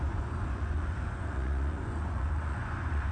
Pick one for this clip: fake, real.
fake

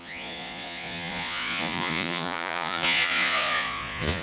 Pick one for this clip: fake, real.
fake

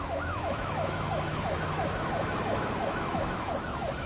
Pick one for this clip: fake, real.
fake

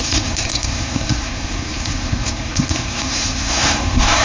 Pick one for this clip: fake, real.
fake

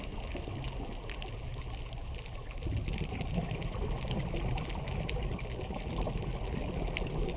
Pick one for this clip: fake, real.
real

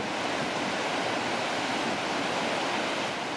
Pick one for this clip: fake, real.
real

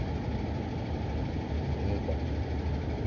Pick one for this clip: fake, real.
real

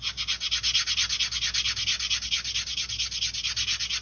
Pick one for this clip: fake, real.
real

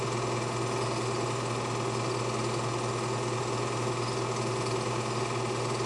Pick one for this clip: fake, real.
real